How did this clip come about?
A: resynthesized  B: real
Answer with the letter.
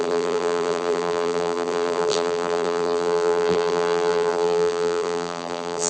A